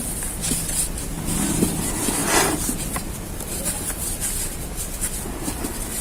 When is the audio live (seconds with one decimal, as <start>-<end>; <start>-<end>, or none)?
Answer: 0.0-6.0